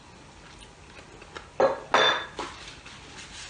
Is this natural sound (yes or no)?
yes